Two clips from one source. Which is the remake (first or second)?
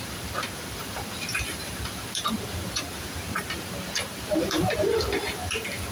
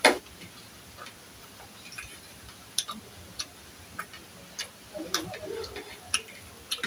first